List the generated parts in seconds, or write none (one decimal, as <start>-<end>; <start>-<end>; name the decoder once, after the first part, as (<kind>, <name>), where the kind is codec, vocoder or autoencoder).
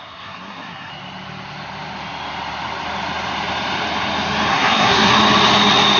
0.0-0.9 (codec, SNAC); 4.5-5.1